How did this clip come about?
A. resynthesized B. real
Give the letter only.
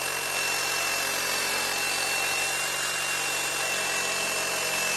B